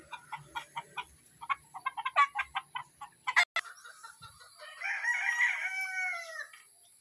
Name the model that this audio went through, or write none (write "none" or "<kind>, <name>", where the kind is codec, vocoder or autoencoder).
none